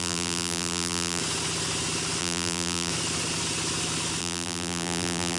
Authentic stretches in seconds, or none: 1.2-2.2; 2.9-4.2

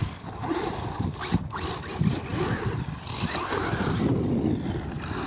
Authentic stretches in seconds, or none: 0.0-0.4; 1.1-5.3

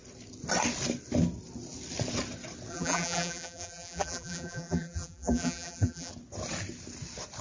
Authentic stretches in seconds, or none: 0.0-2.7; 6.1-7.4

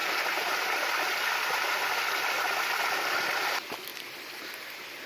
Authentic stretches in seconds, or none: 0.0-3.9; 4.5-5.1

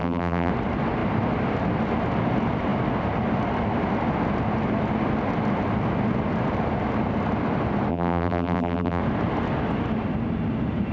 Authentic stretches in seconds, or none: 0.5-7.9; 9.0-10.9